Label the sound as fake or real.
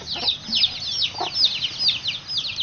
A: real